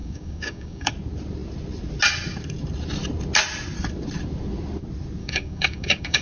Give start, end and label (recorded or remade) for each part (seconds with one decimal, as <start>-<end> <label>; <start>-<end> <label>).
0.0-0.9 remade; 0.9-5.2 recorded; 5.2-6.2 remade

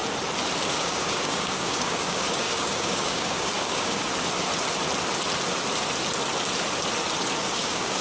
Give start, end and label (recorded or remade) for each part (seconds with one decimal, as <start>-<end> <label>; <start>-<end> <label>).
0.0-0.7 recorded; 0.7-4.1 remade; 4.1-7.4 recorded; 7.4-8.0 remade

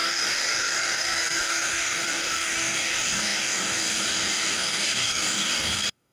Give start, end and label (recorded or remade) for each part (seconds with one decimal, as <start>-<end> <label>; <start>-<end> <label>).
0.0-6.1 remade

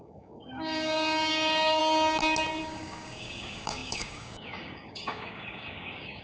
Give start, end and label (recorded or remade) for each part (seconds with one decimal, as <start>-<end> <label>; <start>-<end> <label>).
0.0-1.8 remade; 1.8-2.6 recorded; 2.6-6.2 remade

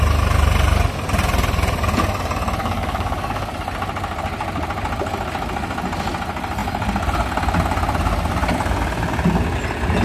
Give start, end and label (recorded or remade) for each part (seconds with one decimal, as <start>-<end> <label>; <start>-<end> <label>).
0.0-2.6 recorded; 2.6-3.5 remade; 3.5-10.0 recorded

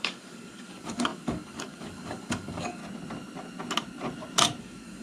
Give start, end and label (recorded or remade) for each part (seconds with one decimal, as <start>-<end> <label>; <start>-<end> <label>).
0.0-2.8 remade; 2.8-4.6 recorded; 4.6-5.0 remade

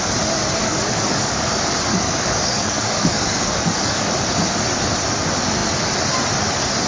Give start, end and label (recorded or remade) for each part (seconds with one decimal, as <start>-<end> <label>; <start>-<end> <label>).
0.0-0.6 recorded; 0.6-1.4 remade; 1.4-1.9 recorded; 1.9-4.1 remade; 4.1-6.9 recorded

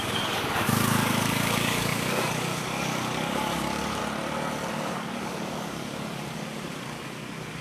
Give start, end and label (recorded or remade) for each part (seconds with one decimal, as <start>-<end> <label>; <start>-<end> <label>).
0.0-4.0 remade; 4.0-4.7 recorded; 4.7-7.6 remade